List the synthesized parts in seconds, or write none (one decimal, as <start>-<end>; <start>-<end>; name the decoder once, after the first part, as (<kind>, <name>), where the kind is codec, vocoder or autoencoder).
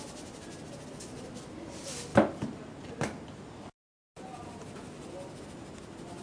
none